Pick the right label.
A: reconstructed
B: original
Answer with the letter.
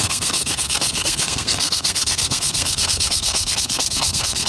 A